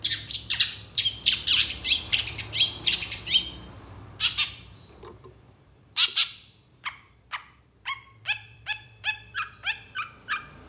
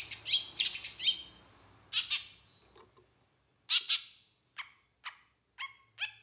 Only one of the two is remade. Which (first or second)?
first